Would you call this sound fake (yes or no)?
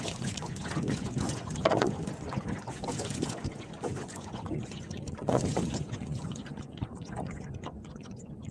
yes